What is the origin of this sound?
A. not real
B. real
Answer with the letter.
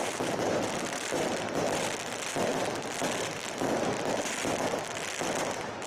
B